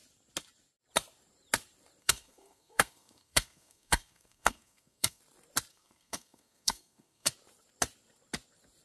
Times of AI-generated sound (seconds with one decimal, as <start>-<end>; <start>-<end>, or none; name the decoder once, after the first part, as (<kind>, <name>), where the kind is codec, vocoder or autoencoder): 2.0-5.2 (codec, SNAC); 5.7-7.3